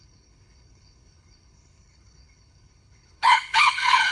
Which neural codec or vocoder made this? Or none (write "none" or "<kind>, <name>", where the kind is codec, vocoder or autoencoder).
codec, HILCodec